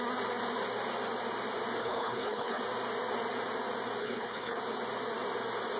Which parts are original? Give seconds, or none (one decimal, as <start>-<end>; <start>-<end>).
0.0-1.8; 2.6-4.0; 4.6-5.8